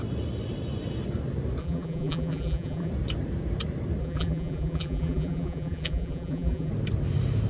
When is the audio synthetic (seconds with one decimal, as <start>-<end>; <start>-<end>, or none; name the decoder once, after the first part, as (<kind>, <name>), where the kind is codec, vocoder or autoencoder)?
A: 1.6-2.9 (vocoder, BigVGAN v2); 4.0-6.7